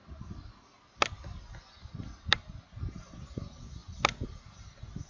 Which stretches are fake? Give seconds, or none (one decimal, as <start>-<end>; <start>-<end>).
none